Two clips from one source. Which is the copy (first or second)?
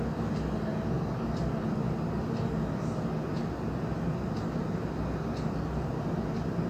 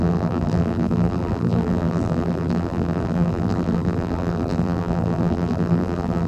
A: second